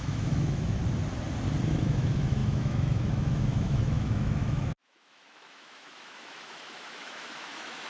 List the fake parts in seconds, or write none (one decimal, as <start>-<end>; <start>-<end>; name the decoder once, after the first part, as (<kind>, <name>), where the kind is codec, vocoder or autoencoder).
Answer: 0.0-0.8 (autoencoder, DAC-VAE); 1.7-7.9